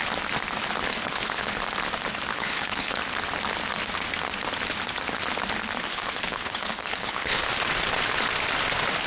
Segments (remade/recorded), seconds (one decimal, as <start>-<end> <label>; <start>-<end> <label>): 0.0-0.9 recorded; 0.9-1.5 remade; 1.5-2.3 recorded; 2.3-3.0 remade; 3.0-5.9 recorded; 5.9-7.5 remade; 7.5-9.1 recorded